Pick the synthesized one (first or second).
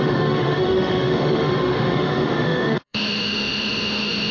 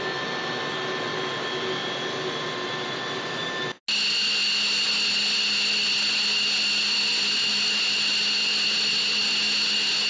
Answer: first